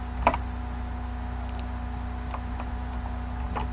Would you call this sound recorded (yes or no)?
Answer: yes